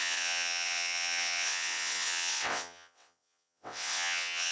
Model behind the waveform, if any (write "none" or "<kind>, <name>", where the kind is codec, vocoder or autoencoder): vocoder, WaveNeXt